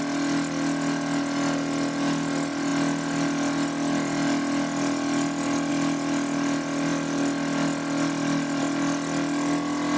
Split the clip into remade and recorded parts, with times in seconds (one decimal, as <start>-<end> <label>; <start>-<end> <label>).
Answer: 0.0-10.0 recorded